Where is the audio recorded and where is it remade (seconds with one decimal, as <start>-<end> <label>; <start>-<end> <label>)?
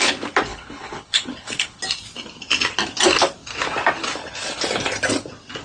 0.0-0.5 recorded; 0.5-1.8 remade; 1.8-5.6 recorded